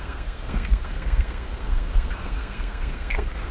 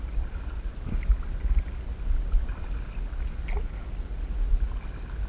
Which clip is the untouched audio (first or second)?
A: second